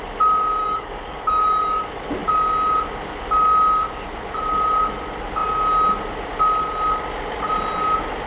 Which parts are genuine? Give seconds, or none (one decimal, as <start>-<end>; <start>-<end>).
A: 0.0-0.6; 1.8-8.3